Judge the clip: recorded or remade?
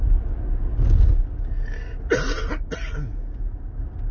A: recorded